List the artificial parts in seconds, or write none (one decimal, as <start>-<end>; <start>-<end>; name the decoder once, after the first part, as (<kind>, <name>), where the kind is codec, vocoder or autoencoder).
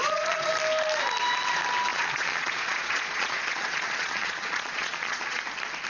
0.0-0.5 (vocoder, Vocos); 1.9-5.4